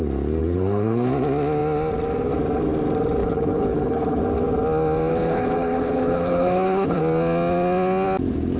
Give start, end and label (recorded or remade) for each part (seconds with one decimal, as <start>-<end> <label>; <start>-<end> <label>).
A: 0.0-0.4 recorded; 0.4-1.1 remade; 1.1-3.2 recorded; 3.2-4.2 remade; 4.2-5.1 recorded; 5.1-7.0 remade; 7.0-8.6 recorded